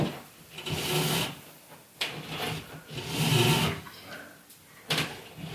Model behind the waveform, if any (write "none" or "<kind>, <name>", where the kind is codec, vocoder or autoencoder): none